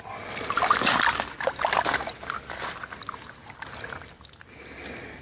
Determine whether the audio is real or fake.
real